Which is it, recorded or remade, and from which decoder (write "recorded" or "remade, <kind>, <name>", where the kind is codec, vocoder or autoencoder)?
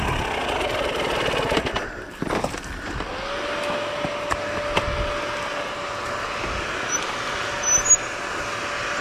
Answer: recorded